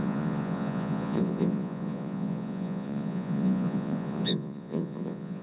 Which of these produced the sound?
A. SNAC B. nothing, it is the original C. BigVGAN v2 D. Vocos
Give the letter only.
D